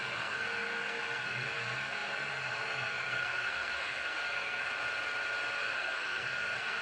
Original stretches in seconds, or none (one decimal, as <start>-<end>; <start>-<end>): 4.7-5.6